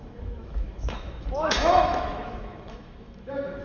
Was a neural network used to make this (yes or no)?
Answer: yes